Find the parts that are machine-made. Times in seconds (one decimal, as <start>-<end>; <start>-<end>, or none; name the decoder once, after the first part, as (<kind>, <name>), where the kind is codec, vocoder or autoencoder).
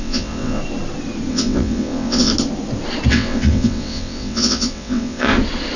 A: 0.0-0.6 (vocoder, WaveNeXt); 1.3-2.3; 3.1-5.3